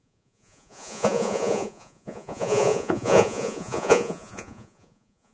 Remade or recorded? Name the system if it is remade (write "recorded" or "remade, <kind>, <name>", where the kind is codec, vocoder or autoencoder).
remade, vocoder, Vocos